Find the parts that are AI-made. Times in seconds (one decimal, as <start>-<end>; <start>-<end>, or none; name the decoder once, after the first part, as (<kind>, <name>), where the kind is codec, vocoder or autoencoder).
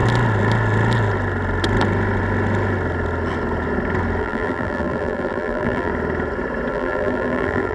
4.2-5.9 (vocoder, BigVGAN v2); 6.7-7.7